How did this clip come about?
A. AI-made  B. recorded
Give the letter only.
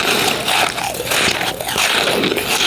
B